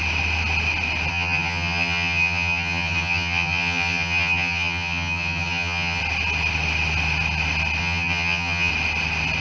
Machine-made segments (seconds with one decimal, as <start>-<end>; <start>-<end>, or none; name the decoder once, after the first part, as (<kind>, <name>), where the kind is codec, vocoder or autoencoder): 1.1-6.0 (vocoder, HiFi-GAN); 7.8-8.7